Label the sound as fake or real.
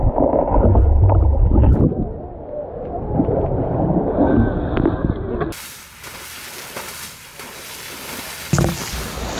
real